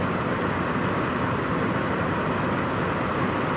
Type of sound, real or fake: real